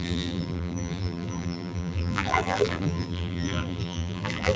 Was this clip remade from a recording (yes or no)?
yes